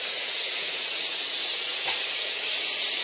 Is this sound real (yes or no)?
no